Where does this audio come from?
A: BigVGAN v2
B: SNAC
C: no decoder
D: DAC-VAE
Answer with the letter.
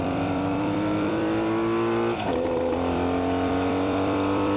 A